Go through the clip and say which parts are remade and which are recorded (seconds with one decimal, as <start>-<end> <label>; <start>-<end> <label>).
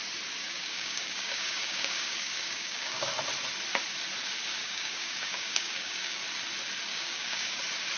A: 0.0-0.4 recorded; 0.4-3.1 remade; 3.1-4.6 recorded; 4.6-6.2 remade; 6.2-6.9 recorded; 6.9-7.6 remade; 7.6-8.0 recorded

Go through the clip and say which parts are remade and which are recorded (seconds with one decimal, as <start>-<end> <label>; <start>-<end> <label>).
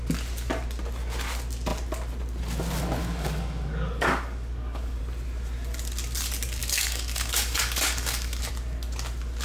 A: 0.0-3.0 recorded; 3.0-5.0 remade; 5.0-6.6 recorded; 6.6-8.5 remade; 8.5-9.4 recorded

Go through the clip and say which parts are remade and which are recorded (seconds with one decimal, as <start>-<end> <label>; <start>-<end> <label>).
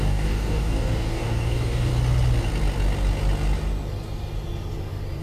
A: 0.0-1.9 remade; 1.9-5.2 recorded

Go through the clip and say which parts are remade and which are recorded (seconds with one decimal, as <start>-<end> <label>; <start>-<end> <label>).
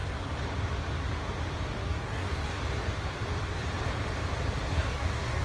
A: 0.0-1.7 recorded; 1.7-2.6 remade; 2.6-4.7 recorded; 4.7-5.4 remade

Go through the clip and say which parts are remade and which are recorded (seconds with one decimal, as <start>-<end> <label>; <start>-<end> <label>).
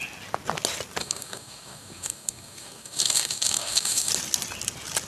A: 0.0-1.0 recorded; 1.0-4.1 remade; 4.1-5.1 recorded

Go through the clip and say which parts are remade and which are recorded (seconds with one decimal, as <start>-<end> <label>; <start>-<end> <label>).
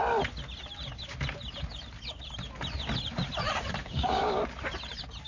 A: 0.0-3.8 recorded; 3.8-4.4 remade; 4.4-5.3 recorded